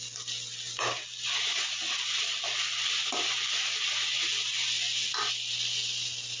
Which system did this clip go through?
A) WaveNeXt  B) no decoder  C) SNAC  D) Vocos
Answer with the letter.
B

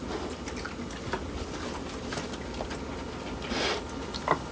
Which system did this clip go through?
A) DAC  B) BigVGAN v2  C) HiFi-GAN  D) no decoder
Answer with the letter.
D